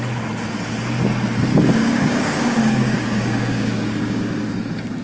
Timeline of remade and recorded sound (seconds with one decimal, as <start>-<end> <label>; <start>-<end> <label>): 0.0-1.5 recorded; 1.5-4.5 remade; 4.5-5.0 recorded